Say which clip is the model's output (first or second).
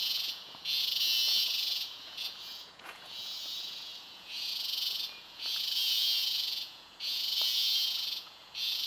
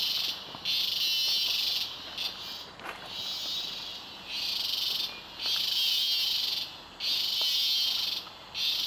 first